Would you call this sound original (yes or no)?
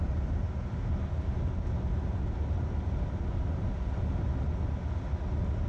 yes